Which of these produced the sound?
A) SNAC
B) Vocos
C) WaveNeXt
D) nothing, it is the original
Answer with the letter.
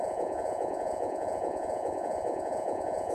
B